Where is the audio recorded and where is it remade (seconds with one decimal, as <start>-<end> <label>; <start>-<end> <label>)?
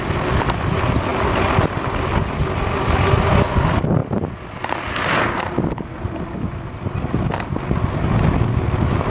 0.0-9.1 recorded